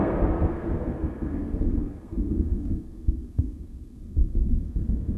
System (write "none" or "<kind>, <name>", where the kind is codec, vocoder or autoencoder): codec, SNAC